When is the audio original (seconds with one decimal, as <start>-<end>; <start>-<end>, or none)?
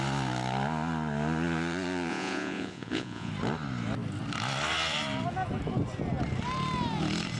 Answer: 0.0-2.1; 3.3-7.4